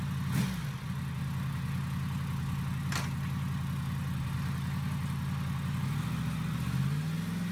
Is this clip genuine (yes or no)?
yes